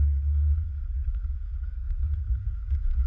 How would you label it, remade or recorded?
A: remade